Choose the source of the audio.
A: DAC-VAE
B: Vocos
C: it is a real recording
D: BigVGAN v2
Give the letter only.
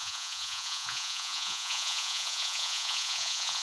B